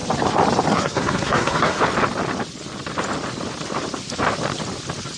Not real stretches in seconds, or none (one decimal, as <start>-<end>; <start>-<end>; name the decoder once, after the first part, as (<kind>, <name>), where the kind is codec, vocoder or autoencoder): 0.7-1.8 (codec, SNAC)